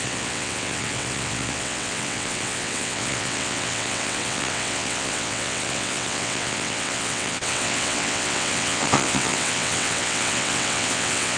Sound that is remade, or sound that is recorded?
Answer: remade